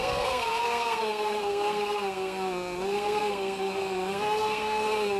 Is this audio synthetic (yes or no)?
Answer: yes